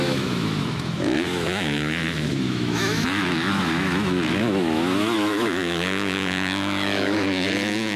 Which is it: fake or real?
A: fake